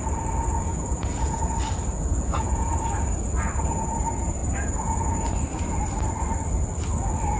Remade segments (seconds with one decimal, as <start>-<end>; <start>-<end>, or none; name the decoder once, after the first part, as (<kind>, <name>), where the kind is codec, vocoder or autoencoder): 0.7-1.4 (vocoder, Vocos); 2.1-2.7